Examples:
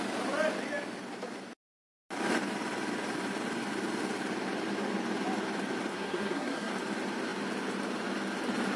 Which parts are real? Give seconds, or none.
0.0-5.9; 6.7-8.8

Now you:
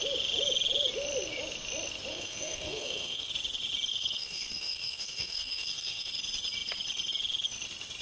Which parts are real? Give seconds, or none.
0.0-2.1; 3.3-3.9; 6.1-8.0